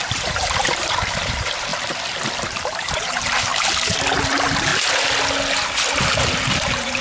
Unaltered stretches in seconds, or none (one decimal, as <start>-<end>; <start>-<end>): 1.7-2.4; 3.5-4.2; 4.7-6.0

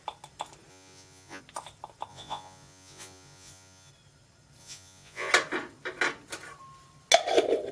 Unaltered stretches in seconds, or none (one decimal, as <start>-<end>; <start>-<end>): 0.0-0.7; 1.4-2.1; 3.9-4.6; 5.3-7.7

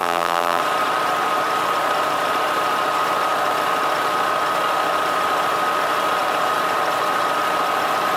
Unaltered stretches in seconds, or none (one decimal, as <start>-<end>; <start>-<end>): 0.6-8.2

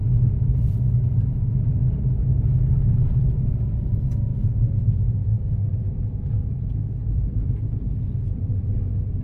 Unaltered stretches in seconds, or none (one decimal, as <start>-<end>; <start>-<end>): 0.0-4.3; 7.8-9.2